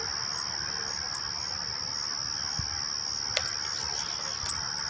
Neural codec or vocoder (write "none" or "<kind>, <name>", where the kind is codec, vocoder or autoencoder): none